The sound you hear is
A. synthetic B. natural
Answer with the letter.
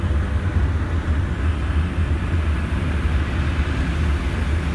B